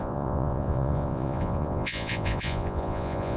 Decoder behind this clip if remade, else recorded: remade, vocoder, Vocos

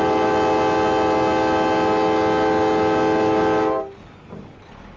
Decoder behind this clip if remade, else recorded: recorded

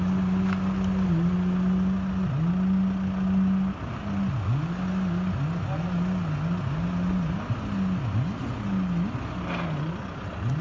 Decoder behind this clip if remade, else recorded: recorded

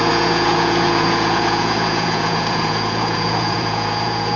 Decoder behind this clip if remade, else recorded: remade, vocoder, Vocos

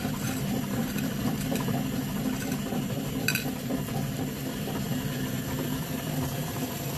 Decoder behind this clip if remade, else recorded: remade, vocoder, BigVGAN v2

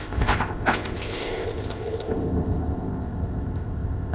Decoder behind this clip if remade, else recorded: remade, codec, ZipCodec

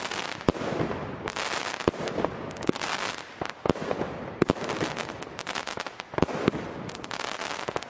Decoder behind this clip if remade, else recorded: recorded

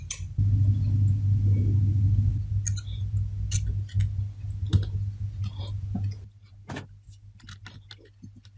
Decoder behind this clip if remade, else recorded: recorded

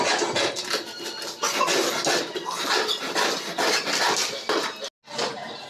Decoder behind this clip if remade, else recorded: recorded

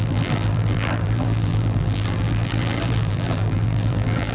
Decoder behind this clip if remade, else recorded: remade, vocoder, BigVGAN v2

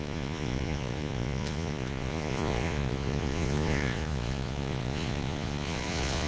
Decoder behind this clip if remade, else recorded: remade, vocoder, Vocos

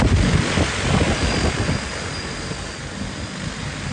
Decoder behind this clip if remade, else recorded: recorded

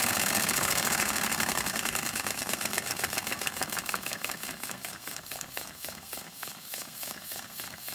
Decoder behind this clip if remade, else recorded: remade, codec, SNAC